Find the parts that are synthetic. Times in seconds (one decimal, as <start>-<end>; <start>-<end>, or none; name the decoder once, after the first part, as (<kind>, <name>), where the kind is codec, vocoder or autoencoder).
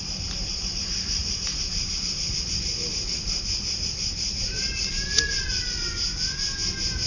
0.5-4.8 (vocoder, BigVGAN v2)